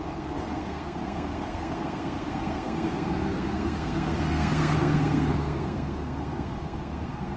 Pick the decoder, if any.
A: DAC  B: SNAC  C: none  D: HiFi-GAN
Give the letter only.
B